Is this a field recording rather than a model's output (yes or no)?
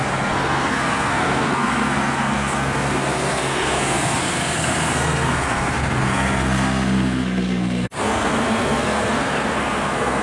no